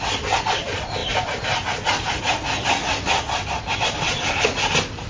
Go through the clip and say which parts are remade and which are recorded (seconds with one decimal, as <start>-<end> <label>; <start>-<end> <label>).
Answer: 0.0-5.1 recorded